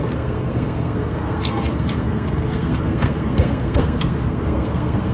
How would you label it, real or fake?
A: fake